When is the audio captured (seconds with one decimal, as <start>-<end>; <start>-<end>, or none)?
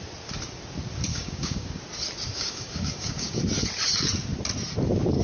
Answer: 0.0-1.1; 1.8-2.3; 3.4-5.2